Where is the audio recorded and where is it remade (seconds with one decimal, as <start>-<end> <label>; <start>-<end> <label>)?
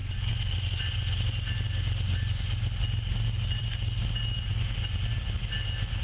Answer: 0.0-6.0 recorded